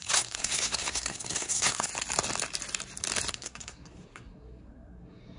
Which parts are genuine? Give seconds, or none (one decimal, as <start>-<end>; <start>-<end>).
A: 1.9-3.3